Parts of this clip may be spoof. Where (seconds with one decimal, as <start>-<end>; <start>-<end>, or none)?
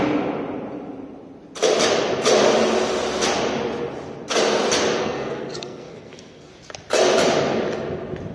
5.0-6.5